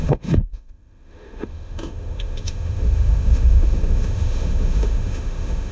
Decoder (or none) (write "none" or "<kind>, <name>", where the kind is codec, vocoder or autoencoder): autoencoder, DAC-VAE